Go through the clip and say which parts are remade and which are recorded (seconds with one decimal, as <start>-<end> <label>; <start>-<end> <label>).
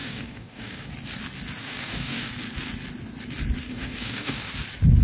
0.0-0.9 remade; 0.9-1.6 recorded; 1.6-2.3 remade; 2.3-3.6 recorded; 3.6-4.5 remade; 4.5-5.0 recorded